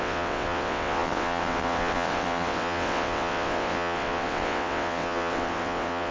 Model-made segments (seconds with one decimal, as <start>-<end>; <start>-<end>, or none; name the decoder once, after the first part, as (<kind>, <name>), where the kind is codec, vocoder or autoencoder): 0.0-6.1 (vocoder, WaveNeXt)